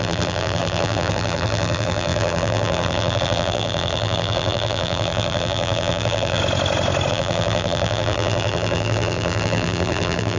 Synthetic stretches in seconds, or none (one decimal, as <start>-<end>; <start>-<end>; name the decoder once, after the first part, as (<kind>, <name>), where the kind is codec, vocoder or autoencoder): 0.0-6.4 (vocoder, BigVGAN v2); 7.1-10.4